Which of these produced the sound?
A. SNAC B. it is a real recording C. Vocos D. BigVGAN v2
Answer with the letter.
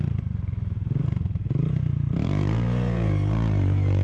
D